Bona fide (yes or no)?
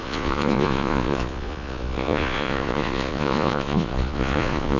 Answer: no